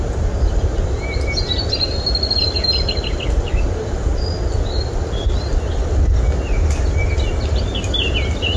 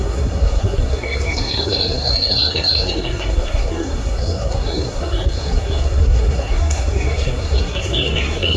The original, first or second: first